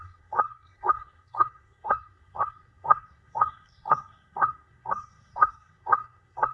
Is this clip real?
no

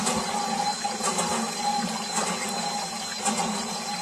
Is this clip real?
yes